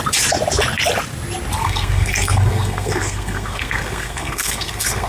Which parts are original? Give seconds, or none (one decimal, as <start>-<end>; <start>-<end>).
0.0-1.6